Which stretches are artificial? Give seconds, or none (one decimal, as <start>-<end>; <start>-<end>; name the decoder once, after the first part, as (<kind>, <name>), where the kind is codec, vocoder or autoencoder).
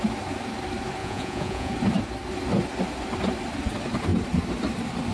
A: 1.0-1.7 (vocoder, Vocos)